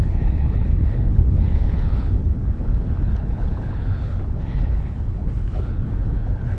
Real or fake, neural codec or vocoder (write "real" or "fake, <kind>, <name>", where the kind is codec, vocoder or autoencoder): fake, codec, HILCodec